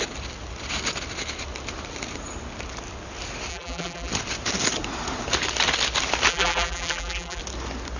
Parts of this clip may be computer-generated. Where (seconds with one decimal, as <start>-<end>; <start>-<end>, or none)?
3.5-4.1; 6.3-7.4

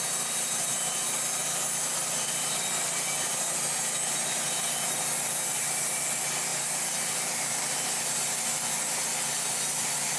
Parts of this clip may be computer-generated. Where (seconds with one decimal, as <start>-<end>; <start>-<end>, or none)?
2.0-2.7; 6.5-7.6

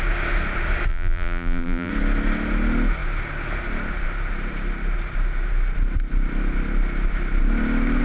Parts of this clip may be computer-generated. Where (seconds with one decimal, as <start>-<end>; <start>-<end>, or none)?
0.9-1.9

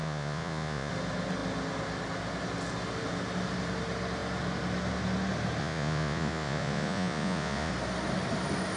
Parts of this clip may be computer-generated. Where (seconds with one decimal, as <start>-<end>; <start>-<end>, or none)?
0.0-0.9; 5.6-7.7

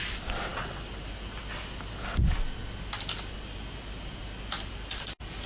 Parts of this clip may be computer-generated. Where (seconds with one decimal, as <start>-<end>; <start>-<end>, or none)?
none

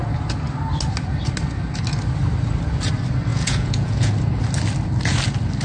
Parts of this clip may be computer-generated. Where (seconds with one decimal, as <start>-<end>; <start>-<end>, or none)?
3.3-4.1

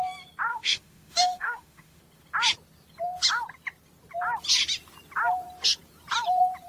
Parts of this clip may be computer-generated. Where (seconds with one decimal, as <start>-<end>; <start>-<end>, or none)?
0.5-2.0